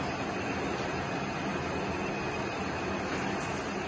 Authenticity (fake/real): real